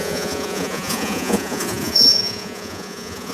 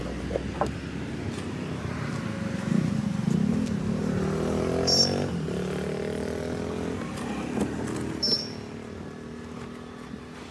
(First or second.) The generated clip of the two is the first